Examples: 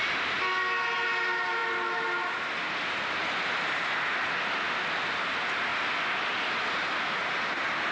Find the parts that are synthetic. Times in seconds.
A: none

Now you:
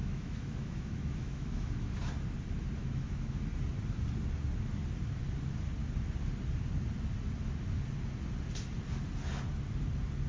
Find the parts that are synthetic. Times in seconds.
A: 0.0-2.0 (autoencoder, DAC-VAE); 2.8-3.4

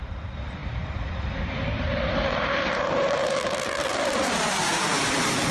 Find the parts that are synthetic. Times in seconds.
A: 0.0-5.5 (vocoder, BigVGAN v2)

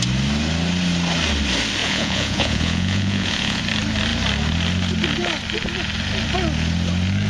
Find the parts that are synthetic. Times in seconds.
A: 1.8-3.6 (vocoder, Vocos)

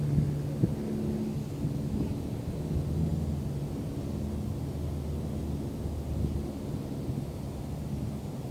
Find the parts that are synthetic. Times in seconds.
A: none

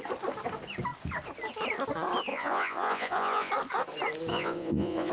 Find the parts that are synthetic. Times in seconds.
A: 2.3-3.5 (vocoder, Vocos); 4.3-5.1